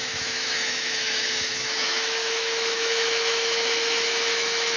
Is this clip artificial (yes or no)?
yes